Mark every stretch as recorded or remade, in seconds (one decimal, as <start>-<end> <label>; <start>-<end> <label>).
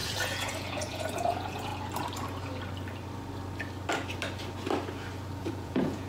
0.0-1.7 remade; 1.7-5.4 recorded; 5.4-6.1 remade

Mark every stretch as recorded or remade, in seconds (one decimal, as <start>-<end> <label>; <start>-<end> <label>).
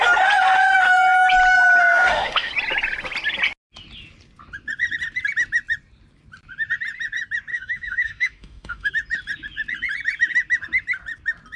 0.0-1.8 recorded; 1.8-2.5 remade; 2.5-7.5 recorded; 7.5-8.9 remade; 8.9-11.6 recorded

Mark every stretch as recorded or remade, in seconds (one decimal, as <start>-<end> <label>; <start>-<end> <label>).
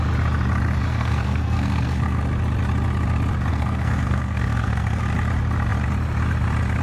0.0-0.9 recorded; 0.9-2.2 remade; 2.2-3.5 recorded; 3.5-5.0 remade; 5.0-6.8 recorded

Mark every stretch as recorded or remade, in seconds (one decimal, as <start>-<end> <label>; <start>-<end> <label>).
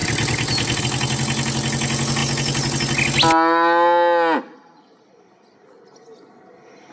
0.0-0.8 remade; 0.8-6.9 recorded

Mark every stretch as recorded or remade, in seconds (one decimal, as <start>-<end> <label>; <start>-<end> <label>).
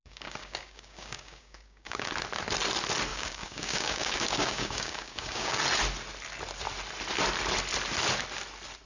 0.0-2.1 remade; 2.1-3.1 recorded; 3.1-5.6 remade; 5.6-8.9 recorded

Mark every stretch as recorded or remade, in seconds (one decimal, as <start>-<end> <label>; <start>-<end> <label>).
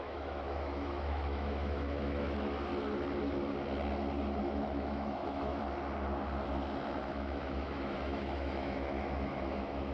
0.0-2.7 remade; 2.7-4.4 recorded; 4.4-5.6 remade; 5.6-7.1 recorded; 7.1-9.9 remade